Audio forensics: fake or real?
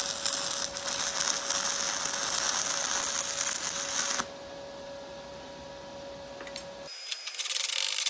real